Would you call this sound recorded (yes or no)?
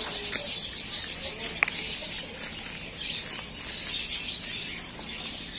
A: yes